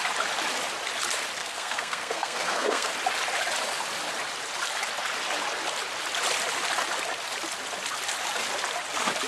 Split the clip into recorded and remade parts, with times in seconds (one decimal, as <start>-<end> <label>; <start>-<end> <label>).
0.0-1.4 recorded; 1.4-2.9 remade; 2.9-9.3 recorded